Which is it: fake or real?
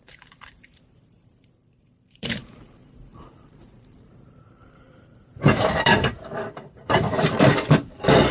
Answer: fake